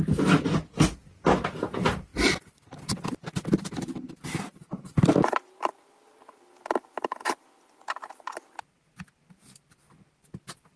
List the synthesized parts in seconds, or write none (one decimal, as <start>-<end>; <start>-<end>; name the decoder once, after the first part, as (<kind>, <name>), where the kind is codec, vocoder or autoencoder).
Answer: 2.1-4.8 (vocoder, BigVGAN v2); 6.6-7.9